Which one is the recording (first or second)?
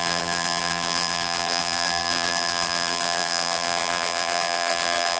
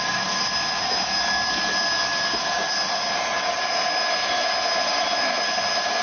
second